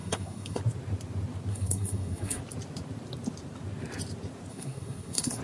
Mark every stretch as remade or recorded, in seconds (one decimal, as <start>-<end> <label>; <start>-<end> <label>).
0.0-0.6 remade; 0.6-1.5 recorded; 1.5-2.4 remade; 2.4-4.5 recorded; 4.5-5.4 remade